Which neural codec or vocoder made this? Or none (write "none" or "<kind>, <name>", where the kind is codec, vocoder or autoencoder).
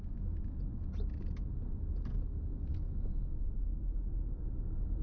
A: none